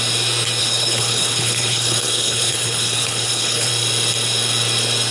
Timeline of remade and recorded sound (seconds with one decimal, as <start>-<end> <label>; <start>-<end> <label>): 0.0-0.6 recorded; 0.6-3.7 remade; 3.7-5.1 recorded